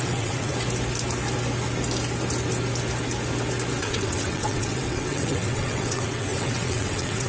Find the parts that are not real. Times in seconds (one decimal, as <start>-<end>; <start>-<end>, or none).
0.0-0.5; 3.8-7.3